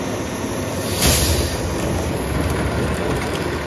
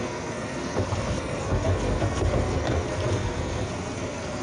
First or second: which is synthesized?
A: second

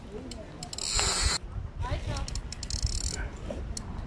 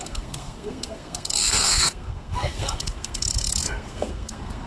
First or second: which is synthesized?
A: second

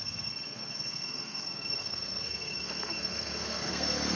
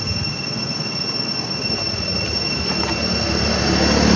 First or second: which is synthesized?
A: first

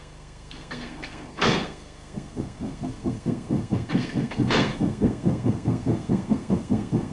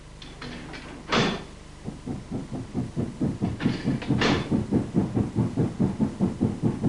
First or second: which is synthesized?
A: first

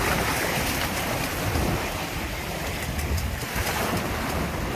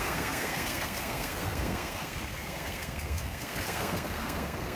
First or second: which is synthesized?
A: second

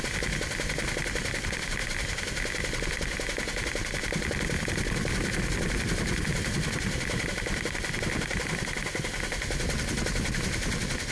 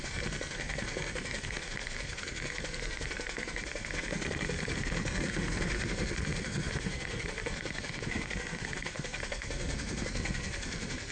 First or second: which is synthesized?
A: second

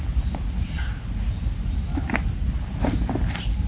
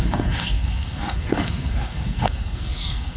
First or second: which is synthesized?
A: second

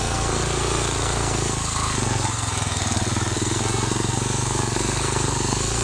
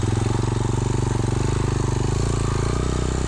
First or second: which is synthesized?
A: first